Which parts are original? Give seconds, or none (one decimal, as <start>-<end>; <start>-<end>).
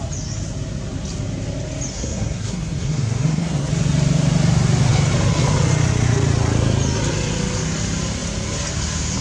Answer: 0.0-1.9; 3.7-9.2